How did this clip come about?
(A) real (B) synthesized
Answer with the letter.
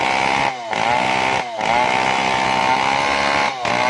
A